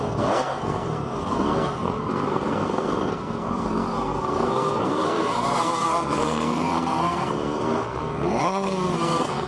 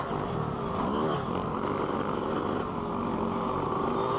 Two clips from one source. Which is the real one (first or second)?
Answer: second